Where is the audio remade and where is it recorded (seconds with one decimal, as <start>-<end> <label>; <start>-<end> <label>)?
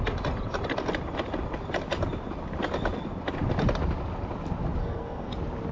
0.0-4.8 recorded; 4.8-5.3 remade; 5.3-5.7 recorded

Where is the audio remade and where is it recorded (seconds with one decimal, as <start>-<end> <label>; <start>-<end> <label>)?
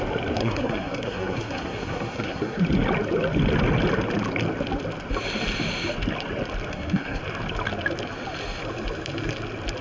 0.0-0.4 recorded; 0.4-2.6 remade; 2.6-6.7 recorded; 6.7-7.2 remade; 7.2-9.8 recorded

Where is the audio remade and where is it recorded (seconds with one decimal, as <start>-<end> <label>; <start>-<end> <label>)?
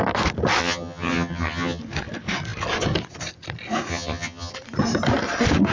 0.0-0.6 recorded; 0.6-1.8 remade; 1.8-3.9 recorded; 3.9-4.5 remade; 4.5-5.7 recorded